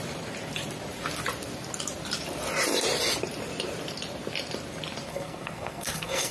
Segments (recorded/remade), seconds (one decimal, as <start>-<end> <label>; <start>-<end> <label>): 0.0-5.1 recorded; 5.1-6.3 remade